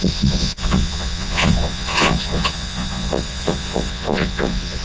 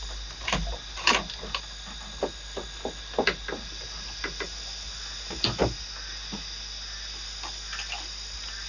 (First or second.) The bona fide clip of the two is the second